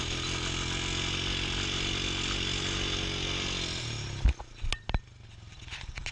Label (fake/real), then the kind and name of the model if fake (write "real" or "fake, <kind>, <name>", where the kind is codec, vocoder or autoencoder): real